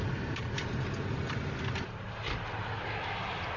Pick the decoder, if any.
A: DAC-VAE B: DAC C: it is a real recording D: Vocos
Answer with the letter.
C